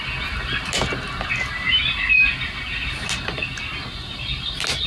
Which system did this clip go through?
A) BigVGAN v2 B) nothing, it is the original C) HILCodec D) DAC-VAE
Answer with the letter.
B